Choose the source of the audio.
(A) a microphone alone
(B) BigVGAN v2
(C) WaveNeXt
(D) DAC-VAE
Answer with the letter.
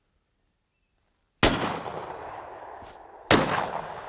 A